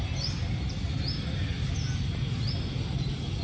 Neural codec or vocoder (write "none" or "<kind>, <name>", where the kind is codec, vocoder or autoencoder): none